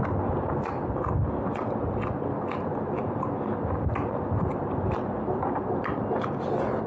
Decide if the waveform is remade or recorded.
recorded